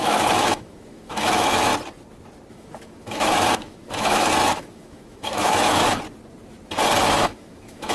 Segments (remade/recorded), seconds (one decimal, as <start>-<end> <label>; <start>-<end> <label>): 0.0-1.7 remade; 1.7-2.5 recorded; 2.5-5.9 remade; 5.9-7.0 recorded; 7.0-7.9 remade